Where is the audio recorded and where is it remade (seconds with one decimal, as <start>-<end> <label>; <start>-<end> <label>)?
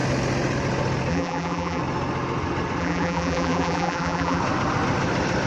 0.0-1.1 recorded; 1.1-1.8 remade; 1.8-2.8 recorded; 2.8-4.4 remade; 4.4-5.5 recorded